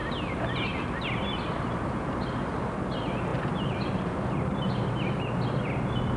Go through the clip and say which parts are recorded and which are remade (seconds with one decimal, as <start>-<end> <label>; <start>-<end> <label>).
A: 0.0-3.3 recorded; 3.3-5.4 remade; 5.4-6.2 recorded